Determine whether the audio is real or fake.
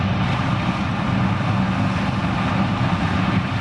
real